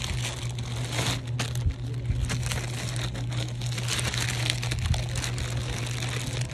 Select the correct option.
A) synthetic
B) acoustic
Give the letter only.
B